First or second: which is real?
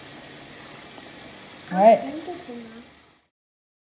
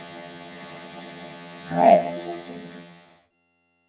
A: first